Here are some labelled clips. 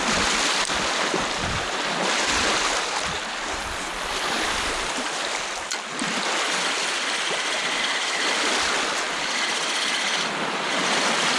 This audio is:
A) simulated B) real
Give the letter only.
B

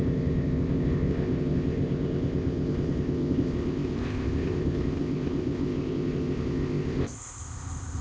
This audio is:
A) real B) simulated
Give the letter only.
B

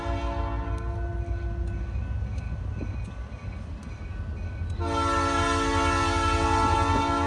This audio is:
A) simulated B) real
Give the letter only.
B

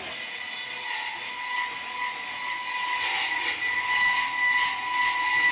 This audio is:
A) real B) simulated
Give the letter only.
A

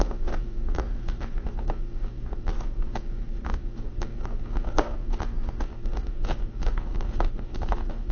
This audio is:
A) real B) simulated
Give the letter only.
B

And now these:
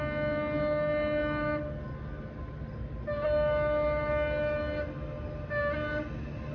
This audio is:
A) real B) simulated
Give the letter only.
A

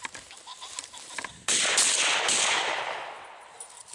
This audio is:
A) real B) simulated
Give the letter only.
A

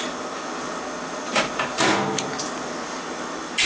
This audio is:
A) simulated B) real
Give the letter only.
B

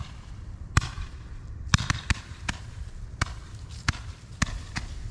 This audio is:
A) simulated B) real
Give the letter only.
A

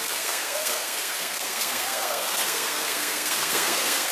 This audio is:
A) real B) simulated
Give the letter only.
B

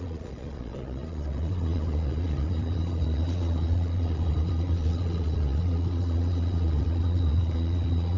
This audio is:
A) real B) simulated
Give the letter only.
B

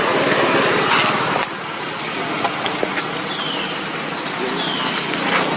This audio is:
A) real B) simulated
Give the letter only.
A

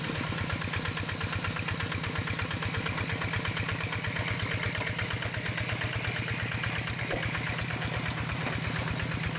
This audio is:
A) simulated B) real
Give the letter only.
B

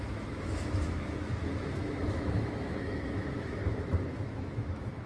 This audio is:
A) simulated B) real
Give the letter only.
A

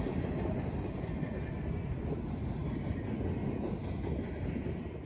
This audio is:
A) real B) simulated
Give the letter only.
A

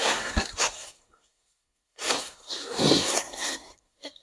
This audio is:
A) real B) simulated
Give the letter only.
B